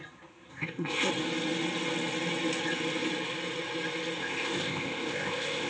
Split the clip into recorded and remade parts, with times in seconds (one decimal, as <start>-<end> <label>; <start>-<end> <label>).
0.0-0.5 recorded; 0.5-1.1 remade; 1.1-4.2 recorded; 4.2-5.7 remade